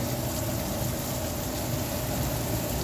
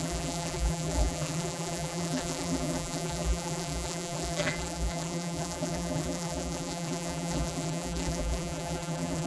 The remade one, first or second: second